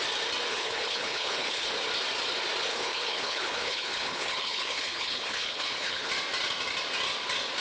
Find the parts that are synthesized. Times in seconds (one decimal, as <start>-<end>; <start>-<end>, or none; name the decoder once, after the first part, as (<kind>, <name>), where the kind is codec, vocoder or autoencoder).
0.5-1.7 (codec, HILCodec); 2.7-6.1